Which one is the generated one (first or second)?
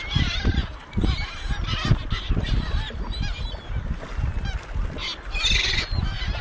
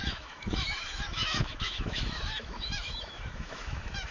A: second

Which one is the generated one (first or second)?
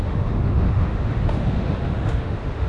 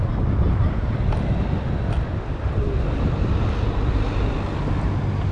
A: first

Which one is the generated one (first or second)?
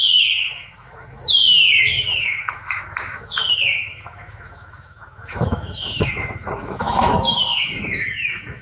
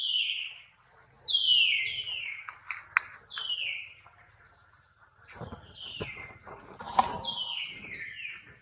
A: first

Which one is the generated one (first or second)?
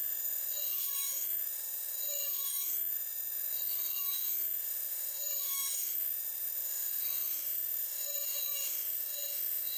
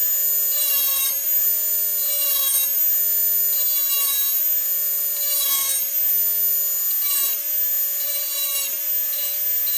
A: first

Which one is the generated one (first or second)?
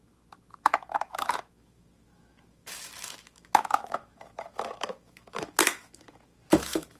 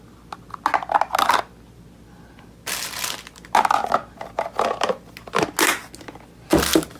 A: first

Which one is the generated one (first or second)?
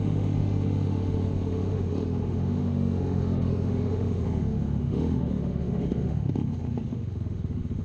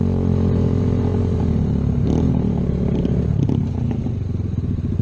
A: first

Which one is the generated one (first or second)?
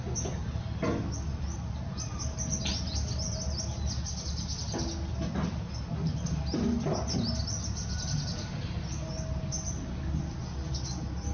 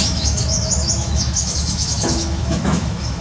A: second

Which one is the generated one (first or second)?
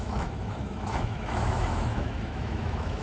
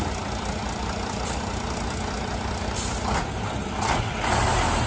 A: first